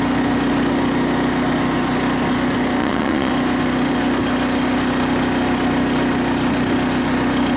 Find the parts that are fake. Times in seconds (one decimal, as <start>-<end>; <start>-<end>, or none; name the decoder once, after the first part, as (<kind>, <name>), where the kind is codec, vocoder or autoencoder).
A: 2.8-3.3 (vocoder, Vocos)